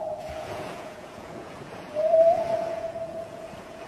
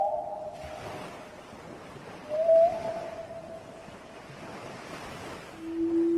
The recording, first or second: second